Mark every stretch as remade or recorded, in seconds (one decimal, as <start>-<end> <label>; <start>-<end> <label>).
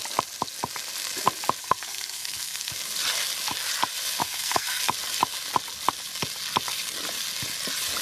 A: 0.0-1.6 recorded; 1.6-2.7 remade; 2.7-4.2 recorded; 4.2-4.8 remade; 4.8-8.0 recorded